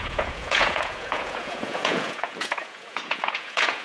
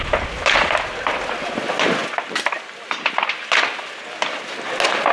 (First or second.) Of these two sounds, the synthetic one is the first